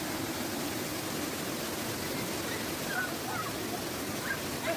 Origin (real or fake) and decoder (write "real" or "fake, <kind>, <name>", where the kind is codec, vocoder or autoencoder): real